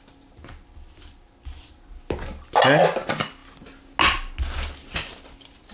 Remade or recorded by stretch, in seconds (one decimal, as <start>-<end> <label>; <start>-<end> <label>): 0.0-5.7 recorded